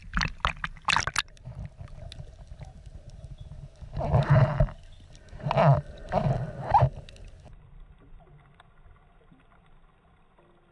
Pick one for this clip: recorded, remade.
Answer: recorded